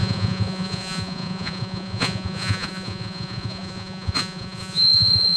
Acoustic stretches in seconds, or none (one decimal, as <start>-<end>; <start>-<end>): none